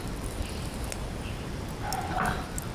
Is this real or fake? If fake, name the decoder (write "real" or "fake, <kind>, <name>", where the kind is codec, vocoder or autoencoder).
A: real